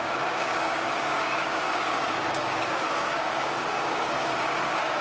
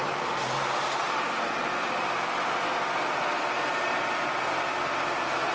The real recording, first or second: second